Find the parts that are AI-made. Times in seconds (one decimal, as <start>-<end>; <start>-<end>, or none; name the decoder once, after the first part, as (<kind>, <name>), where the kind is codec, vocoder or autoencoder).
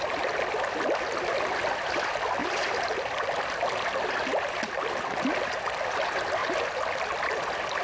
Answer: 2.4-4.9 (vocoder, BigVGAN v2); 6.4-7.8